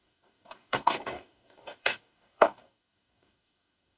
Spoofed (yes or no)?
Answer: yes